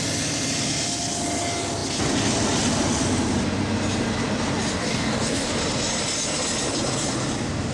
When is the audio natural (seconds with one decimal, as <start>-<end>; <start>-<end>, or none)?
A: 0.0-4.8; 5.5-7.7